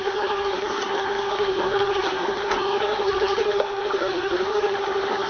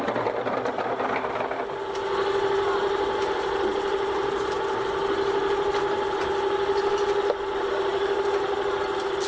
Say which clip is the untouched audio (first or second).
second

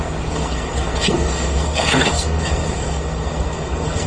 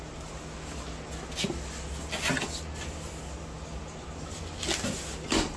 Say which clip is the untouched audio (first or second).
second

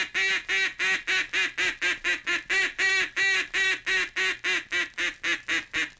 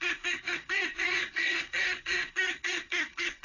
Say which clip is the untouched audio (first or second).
first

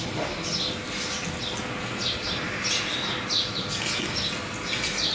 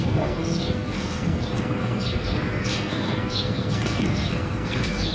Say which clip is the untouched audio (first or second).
first